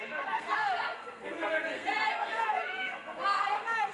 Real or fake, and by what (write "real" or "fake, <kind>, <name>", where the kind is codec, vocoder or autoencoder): fake, codec, SNAC